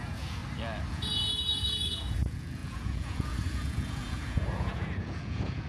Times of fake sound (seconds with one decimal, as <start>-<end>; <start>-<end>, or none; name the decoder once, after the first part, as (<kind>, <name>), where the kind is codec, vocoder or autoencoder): 0.0-0.4 (vocoder, Vocos); 0.9-5.7